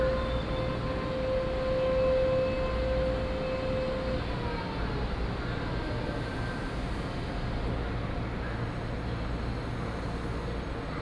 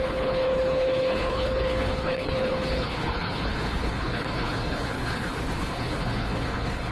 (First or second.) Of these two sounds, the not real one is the second